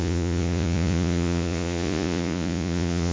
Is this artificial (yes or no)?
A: yes